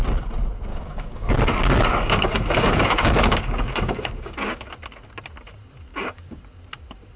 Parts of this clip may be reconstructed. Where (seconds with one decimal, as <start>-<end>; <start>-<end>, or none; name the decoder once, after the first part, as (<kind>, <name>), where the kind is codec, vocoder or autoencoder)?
0.7-1.3 (codec, DAC); 1.9-4.7; 5.9-6.4